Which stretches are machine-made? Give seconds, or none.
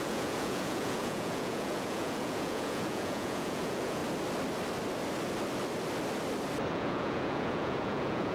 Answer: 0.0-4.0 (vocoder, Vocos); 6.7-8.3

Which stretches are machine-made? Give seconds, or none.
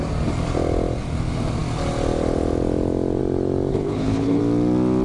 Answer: 3.7-4.4 (codec, HILCodec)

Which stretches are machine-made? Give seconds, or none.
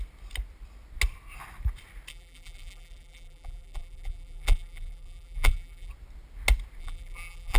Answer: 2.1-5.9 (vocoder, BigVGAN v2); 6.8-7.6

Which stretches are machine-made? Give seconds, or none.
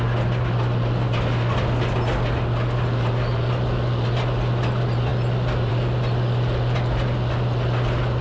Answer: none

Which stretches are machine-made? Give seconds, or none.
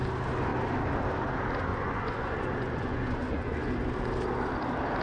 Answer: 1.7-3.6 (vocoder, Vocos)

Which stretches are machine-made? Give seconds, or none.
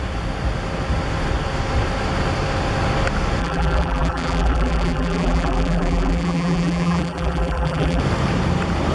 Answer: 3.4-8.0 (vocoder, BigVGAN v2)